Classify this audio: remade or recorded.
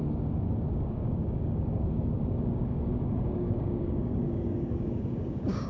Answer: remade